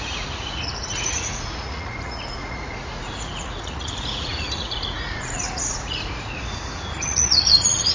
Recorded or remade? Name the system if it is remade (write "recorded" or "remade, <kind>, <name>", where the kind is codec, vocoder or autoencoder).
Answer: remade, vocoder, Vocos